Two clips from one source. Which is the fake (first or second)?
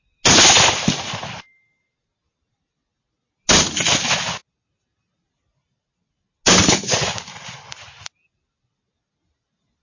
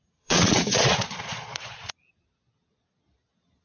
second